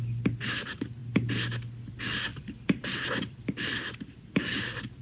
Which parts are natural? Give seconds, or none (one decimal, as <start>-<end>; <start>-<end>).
0.0-2.3; 3.4-5.0